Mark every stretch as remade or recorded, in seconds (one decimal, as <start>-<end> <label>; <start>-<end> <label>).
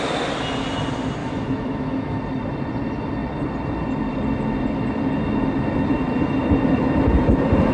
0.0-1.2 recorded; 1.2-2.2 remade; 2.2-7.7 recorded